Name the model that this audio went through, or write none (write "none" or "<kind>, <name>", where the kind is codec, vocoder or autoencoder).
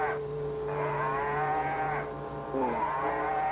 none